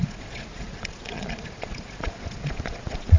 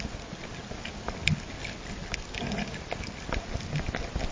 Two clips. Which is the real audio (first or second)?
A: second